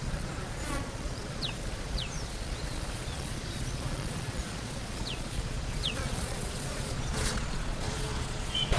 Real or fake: fake